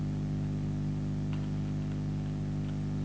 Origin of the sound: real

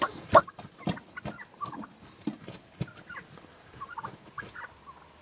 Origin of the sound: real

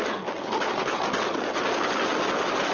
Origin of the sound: real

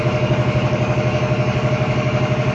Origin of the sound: fake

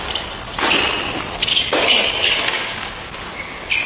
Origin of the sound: real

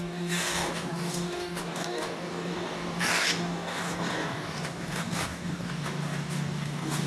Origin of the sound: fake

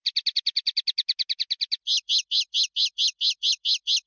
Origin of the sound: real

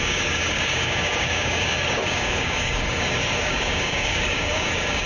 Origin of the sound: fake